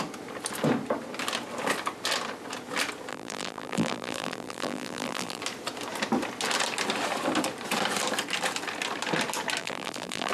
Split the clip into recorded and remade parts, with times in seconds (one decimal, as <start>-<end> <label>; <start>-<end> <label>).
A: 0.0-3.1 recorded; 3.1-5.4 remade; 5.4-9.6 recorded; 9.6-10.3 remade